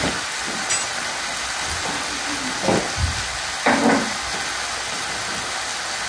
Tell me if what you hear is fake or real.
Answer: real